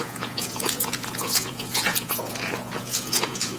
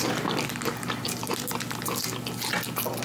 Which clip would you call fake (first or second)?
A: first